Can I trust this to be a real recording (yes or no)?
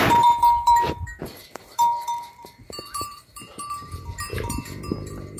no